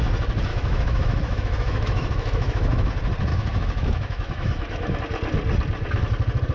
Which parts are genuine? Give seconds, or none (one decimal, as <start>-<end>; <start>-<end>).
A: 0.0-0.5; 2.9-3.3; 5.0-6.5